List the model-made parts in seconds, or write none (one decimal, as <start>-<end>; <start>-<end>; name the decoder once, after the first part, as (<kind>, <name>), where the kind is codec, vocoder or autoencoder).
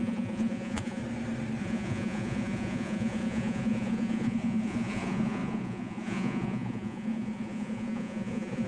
0.0-1.0 (vocoder, Vocos); 1.6-8.7